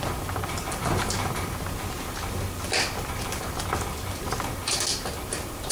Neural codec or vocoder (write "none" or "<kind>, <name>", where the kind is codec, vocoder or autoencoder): none